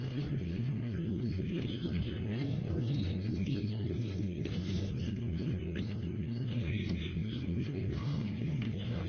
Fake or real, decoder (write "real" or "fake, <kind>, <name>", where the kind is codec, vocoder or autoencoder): fake, codec, SNAC